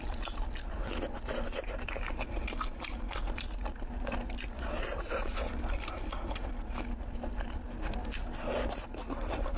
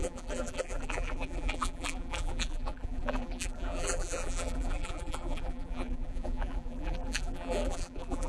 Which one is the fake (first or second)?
second